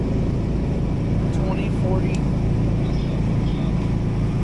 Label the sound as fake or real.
real